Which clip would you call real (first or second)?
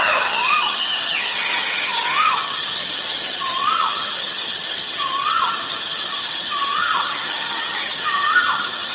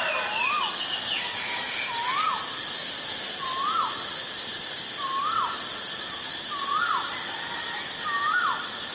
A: second